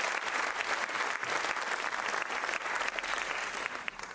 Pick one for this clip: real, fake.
real